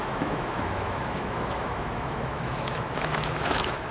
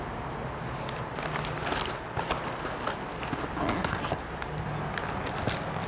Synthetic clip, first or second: first